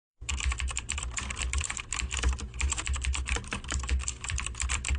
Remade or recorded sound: remade